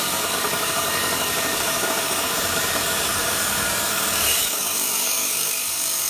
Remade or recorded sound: remade